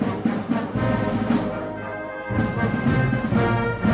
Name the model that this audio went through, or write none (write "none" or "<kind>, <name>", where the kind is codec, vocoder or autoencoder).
vocoder, BigVGAN v2